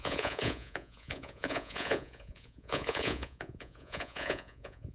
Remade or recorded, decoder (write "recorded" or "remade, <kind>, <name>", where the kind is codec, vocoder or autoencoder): remade, vocoder, Vocos